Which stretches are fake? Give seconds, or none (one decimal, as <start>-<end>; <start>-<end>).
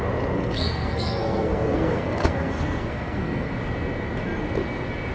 0.4-3.5